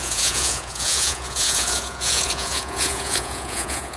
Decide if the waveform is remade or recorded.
remade